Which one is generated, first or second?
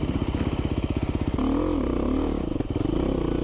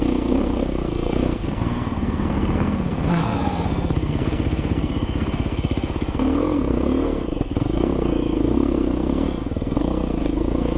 second